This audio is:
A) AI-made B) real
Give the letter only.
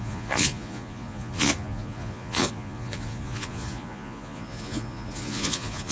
A